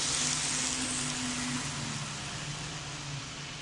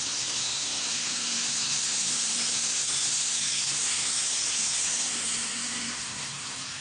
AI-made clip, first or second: second